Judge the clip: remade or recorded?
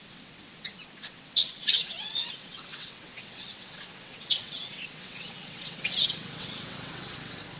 remade